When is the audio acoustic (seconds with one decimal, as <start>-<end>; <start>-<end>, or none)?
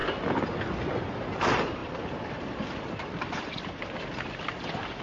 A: 0.0-1.8